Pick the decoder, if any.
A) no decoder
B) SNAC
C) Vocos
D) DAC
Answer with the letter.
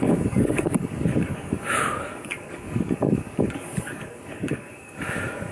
D